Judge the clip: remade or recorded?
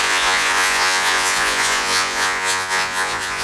remade